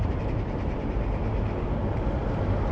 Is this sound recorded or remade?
recorded